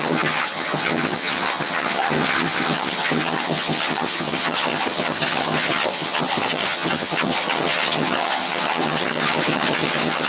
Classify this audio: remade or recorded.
remade